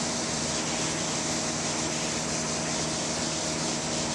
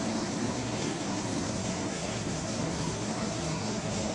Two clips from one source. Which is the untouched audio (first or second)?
first